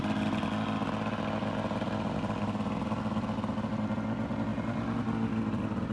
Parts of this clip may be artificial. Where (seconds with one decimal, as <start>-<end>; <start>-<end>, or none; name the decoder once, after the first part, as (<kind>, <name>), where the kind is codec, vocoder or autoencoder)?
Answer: none